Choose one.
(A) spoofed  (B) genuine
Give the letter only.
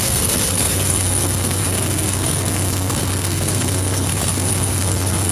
A